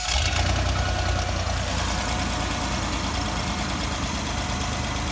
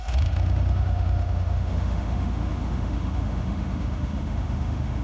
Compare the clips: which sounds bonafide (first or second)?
first